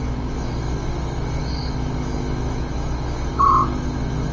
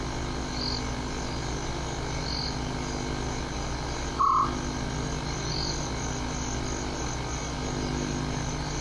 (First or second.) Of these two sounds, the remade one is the first